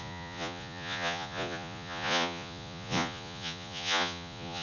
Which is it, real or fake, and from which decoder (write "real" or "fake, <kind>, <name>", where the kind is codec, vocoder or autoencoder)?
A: fake, vocoder, Vocos